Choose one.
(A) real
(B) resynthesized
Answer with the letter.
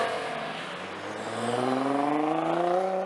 A